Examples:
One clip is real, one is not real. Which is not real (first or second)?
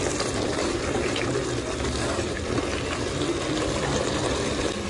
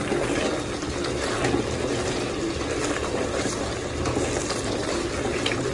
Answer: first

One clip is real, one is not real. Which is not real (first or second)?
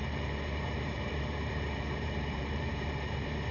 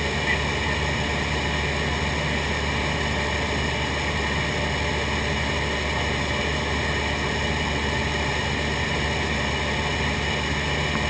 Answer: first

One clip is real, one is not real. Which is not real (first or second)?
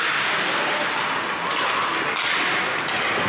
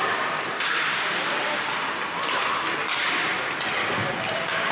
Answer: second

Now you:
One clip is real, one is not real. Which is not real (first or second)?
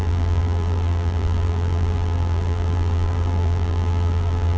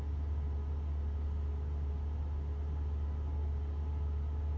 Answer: first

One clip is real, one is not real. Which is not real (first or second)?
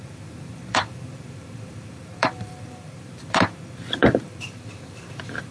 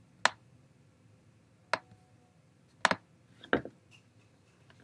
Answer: first